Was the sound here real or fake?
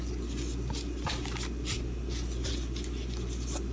real